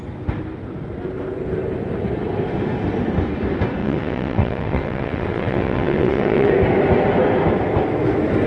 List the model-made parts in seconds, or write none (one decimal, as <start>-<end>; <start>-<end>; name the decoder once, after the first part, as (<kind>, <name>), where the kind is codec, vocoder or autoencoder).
3.8-6.5 (vocoder, WaveNeXt)